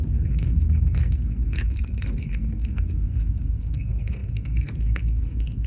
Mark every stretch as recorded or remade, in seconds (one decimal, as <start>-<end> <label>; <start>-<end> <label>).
0.0-5.7 remade